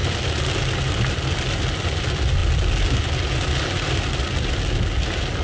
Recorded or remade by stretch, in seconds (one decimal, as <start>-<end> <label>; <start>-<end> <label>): 0.0-5.4 recorded